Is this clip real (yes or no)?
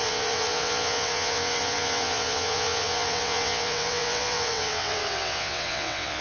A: no